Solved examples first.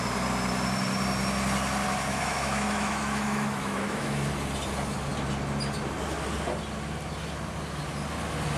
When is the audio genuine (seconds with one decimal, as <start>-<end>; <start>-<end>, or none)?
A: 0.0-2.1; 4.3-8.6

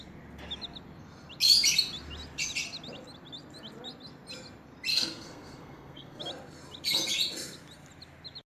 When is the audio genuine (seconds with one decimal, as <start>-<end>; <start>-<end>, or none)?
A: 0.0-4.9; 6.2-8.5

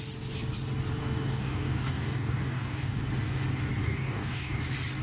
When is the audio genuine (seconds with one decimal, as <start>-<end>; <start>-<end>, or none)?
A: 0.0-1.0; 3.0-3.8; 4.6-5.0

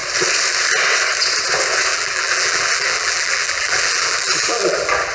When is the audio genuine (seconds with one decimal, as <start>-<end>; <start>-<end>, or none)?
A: 0.0-1.9

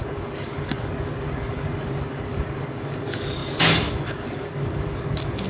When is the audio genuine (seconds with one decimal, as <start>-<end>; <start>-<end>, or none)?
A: none